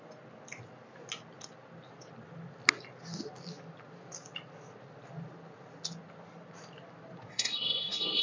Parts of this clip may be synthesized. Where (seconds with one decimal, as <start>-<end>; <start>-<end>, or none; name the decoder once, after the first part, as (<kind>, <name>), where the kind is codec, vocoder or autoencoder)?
7.3-8.2 (codec, SNAC)